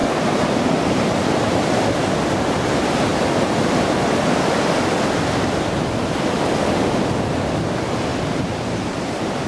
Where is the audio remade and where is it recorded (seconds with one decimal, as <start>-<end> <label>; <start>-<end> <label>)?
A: 0.0-2.1 remade; 2.1-8.1 recorded; 8.1-9.5 remade